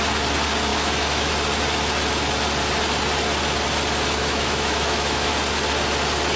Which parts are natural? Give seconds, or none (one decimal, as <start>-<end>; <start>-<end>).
0.0-0.7; 1.3-4.2; 5.3-6.4